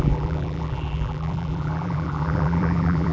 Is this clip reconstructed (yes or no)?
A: yes